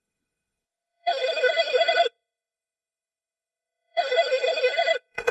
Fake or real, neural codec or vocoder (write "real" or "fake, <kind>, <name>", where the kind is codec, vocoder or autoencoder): fake, codec, SNAC